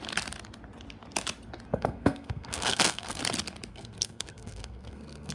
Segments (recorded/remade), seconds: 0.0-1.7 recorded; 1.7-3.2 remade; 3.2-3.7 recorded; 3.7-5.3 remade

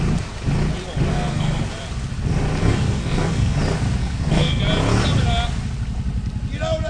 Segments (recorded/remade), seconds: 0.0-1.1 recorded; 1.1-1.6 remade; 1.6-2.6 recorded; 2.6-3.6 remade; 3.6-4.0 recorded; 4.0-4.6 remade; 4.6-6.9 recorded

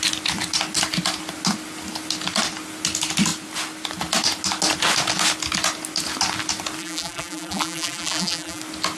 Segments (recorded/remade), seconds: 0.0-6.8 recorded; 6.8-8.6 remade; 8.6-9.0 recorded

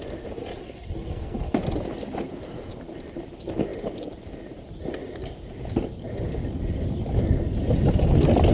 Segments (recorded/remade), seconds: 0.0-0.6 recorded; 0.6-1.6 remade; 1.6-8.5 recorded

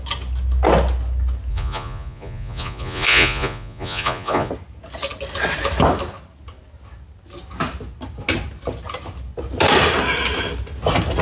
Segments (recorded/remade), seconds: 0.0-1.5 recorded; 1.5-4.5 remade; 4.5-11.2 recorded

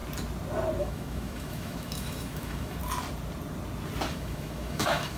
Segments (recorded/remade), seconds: 0.0-0.8 recorded; 0.8-2.8 remade; 2.8-4.1 recorded; 4.1-5.2 remade

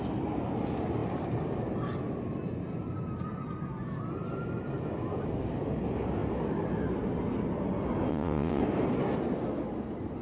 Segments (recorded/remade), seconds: 0.0-8.1 recorded; 8.1-8.6 remade; 8.6-10.2 recorded